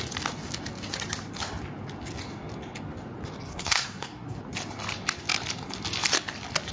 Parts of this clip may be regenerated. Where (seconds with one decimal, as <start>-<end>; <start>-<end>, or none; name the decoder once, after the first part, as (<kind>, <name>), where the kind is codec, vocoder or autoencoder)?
3.5-4.4 (codec, SNAC)